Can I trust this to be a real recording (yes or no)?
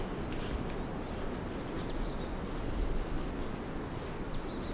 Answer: yes